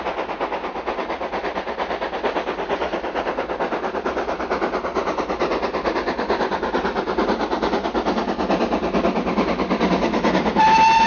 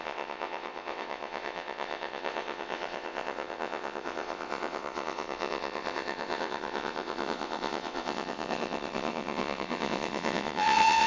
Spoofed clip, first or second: second